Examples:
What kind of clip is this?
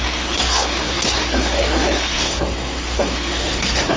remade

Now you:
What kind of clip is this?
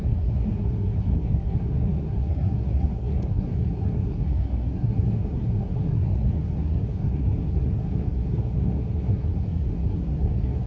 remade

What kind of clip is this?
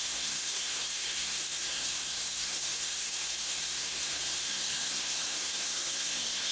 remade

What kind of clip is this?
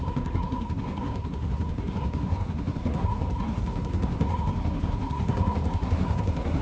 remade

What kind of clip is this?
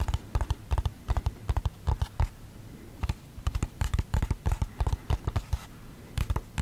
recorded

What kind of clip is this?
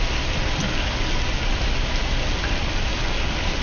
recorded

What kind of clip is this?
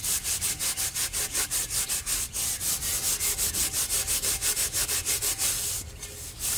recorded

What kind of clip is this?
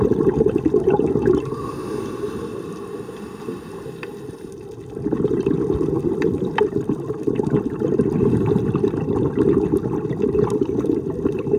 recorded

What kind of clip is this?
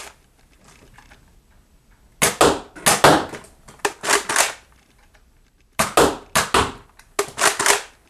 recorded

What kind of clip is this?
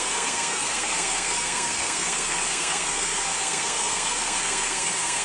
remade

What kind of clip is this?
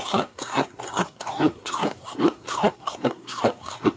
remade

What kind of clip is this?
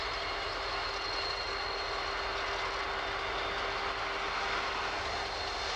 recorded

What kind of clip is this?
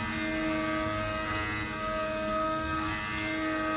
recorded